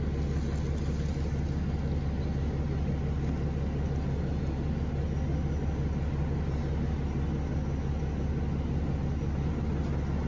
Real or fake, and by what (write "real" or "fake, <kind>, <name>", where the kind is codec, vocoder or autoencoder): real